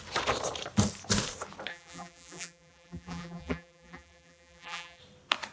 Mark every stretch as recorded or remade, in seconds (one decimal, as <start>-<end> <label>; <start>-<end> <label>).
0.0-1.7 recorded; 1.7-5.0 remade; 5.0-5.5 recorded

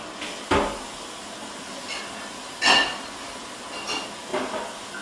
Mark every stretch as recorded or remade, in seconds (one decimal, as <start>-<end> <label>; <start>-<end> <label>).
0.0-5.0 recorded

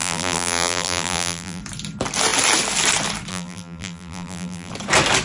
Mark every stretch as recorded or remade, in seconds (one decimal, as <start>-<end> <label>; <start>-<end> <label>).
0.0-1.6 remade; 1.6-3.3 recorded; 3.3-4.7 remade; 4.7-5.2 recorded

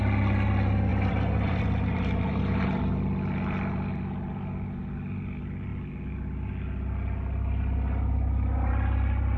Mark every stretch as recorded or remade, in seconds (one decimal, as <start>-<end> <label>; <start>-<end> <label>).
0.0-0.9 recorded; 0.9-2.8 remade; 2.8-9.4 recorded